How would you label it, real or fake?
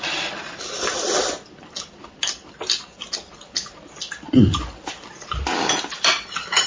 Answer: real